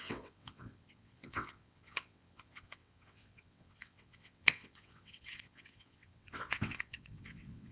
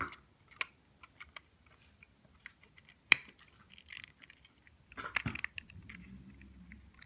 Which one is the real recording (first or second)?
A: second